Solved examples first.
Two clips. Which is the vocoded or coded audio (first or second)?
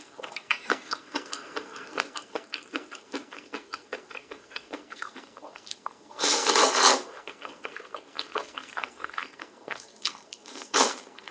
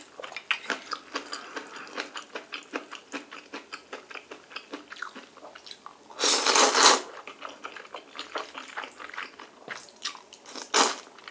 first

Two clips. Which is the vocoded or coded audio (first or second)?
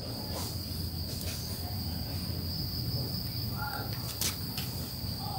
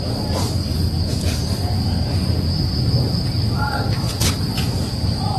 second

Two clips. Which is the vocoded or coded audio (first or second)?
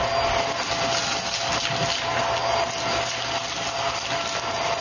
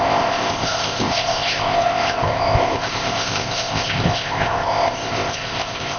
second